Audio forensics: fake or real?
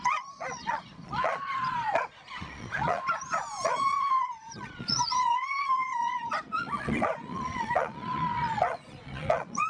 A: fake